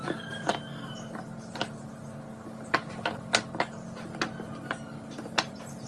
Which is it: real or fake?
real